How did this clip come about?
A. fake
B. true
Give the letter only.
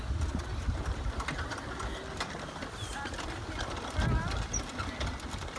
B